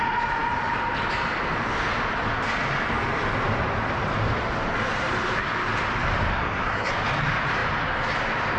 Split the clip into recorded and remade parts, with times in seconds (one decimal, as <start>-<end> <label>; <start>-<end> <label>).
0.0-6.3 recorded; 6.3-6.9 remade; 6.9-8.6 recorded